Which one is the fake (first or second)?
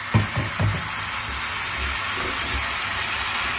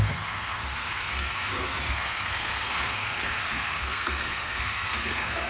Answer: second